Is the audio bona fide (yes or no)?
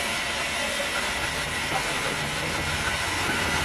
yes